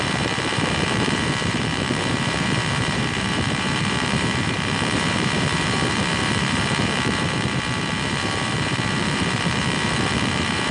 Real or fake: fake